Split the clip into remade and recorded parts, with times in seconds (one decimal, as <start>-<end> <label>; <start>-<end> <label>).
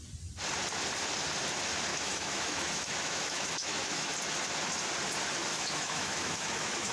0.0-1.9 recorded; 1.9-4.1 remade; 4.1-5.5 recorded; 5.5-6.9 remade